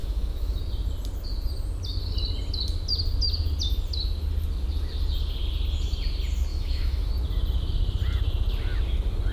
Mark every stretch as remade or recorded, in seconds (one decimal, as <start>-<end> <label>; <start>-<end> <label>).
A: 0.0-0.6 remade; 0.6-6.5 recorded; 6.5-7.1 remade; 7.1-9.3 recorded